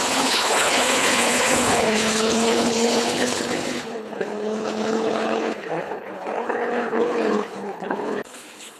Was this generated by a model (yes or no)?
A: yes